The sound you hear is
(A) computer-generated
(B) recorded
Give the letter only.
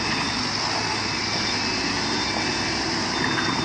B